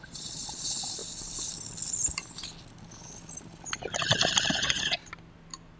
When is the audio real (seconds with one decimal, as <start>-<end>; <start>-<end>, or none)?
1.0-4.5; 5.0-5.8